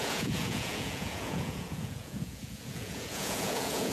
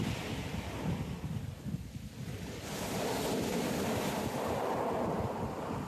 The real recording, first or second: second